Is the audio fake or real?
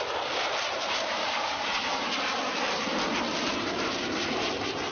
fake